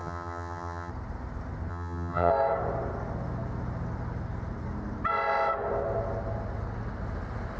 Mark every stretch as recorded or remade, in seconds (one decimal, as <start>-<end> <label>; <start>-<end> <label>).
0.0-0.9 remade; 0.9-1.7 recorded; 1.7-2.3 remade; 2.3-7.6 recorded